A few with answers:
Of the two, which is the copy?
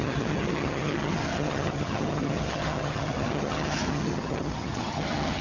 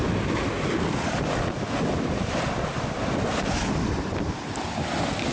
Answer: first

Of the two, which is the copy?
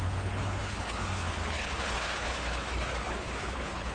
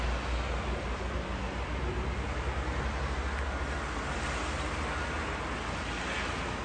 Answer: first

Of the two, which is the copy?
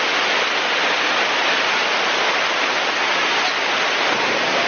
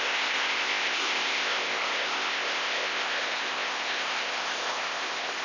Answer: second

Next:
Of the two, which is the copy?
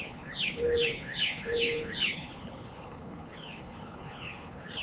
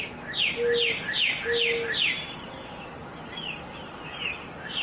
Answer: first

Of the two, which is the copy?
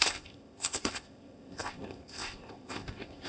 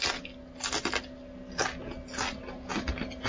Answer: first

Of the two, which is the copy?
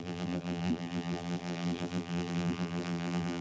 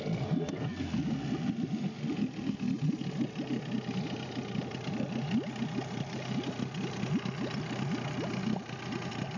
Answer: first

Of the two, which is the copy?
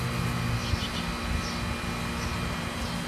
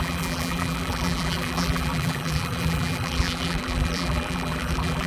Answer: second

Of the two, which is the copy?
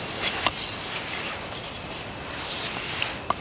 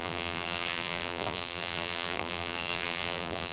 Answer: second